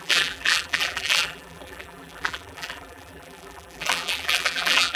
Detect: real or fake fake